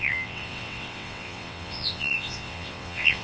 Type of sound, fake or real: fake